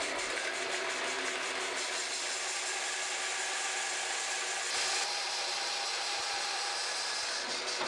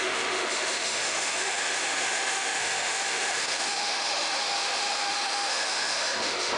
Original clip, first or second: first